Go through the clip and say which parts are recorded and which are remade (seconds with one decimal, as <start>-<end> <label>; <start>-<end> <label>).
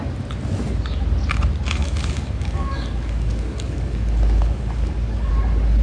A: 0.0-1.8 recorded; 1.8-5.3 remade; 5.3-5.8 recorded